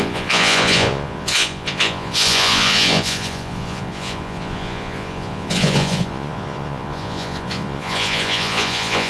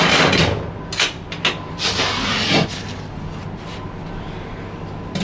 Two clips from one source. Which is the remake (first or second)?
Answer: first